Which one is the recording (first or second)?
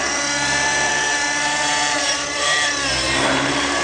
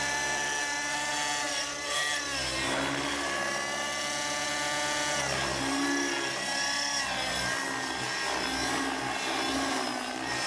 second